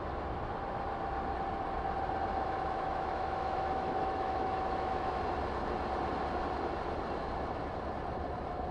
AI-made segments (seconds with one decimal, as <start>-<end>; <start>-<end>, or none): 2.3-5.2